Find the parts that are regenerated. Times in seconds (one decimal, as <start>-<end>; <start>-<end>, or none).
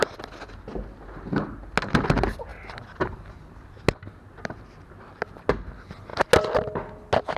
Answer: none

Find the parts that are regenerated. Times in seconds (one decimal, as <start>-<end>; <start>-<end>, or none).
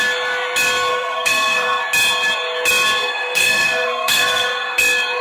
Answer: 0.9-1.8; 3.0-4.8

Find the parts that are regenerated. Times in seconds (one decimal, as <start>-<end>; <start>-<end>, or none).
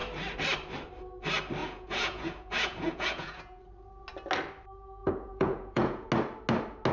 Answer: 1.6-3.6; 5.0-6.1